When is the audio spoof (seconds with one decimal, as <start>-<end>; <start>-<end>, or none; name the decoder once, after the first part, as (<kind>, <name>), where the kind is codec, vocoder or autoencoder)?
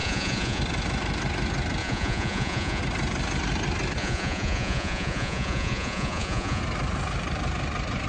0.0-0.6 (vocoder, Vocos); 1.8-2.8; 4.0-6.6